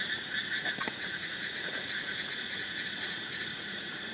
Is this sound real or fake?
fake